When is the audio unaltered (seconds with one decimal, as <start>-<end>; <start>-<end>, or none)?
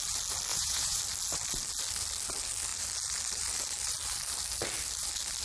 0.0-0.5; 1.0-5.4